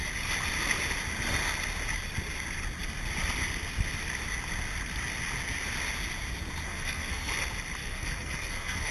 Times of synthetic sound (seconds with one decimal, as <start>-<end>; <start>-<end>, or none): 6.7-7.3; 7.8-8.9